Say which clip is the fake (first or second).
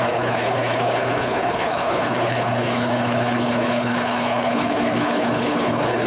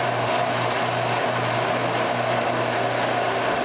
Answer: first